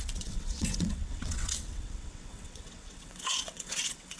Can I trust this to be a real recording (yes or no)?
no